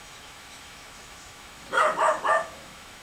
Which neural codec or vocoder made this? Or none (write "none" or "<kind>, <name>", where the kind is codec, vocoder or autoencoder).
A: autoencoder, DAC-VAE